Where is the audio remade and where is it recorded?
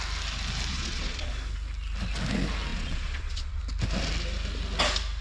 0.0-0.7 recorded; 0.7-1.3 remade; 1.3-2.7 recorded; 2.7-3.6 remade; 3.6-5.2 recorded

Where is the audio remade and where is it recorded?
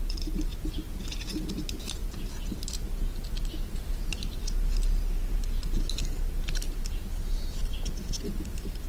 0.0-8.9 recorded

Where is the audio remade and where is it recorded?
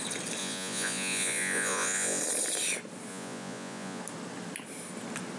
0.0-0.4 recorded; 0.4-2.2 remade; 2.2-3.1 recorded; 3.1-4.0 remade; 4.0-5.4 recorded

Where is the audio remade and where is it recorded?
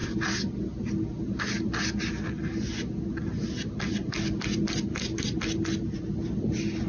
0.0-6.9 recorded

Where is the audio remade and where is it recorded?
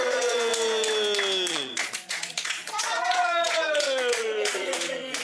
0.0-0.5 remade; 0.5-1.5 recorded; 1.5-5.2 remade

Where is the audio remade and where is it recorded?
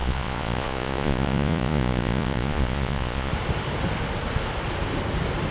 0.0-3.3 remade; 3.3-5.5 recorded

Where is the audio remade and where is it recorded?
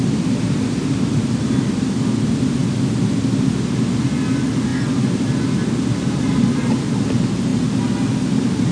0.0-8.7 recorded